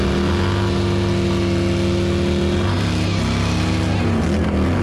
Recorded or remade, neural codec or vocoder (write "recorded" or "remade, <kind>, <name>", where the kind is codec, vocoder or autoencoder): recorded